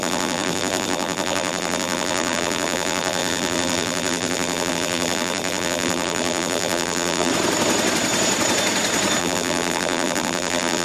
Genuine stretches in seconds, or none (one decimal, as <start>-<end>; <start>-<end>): 7.3-9.2